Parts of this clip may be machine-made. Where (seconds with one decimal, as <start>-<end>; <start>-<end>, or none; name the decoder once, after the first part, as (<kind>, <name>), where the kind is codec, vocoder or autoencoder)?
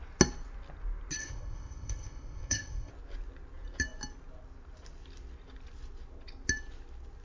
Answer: 1.2-2.9 (codec, ZipCodec)